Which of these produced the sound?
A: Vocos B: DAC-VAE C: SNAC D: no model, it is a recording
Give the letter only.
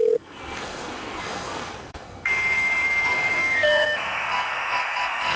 C